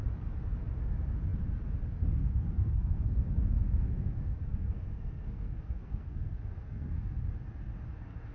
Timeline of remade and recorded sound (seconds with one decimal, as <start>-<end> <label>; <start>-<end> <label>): 0.0-2.2 recorded; 2.2-7.2 remade; 7.2-8.3 recorded